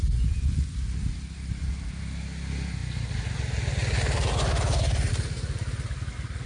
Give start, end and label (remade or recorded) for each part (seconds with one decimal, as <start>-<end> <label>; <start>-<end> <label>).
0.0-6.5 recorded